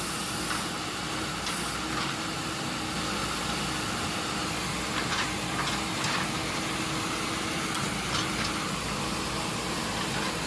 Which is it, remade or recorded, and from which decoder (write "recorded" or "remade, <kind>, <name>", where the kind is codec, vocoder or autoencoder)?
recorded